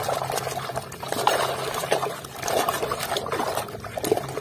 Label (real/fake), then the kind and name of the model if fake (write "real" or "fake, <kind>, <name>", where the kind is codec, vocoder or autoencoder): real